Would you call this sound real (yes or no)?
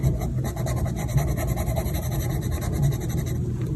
yes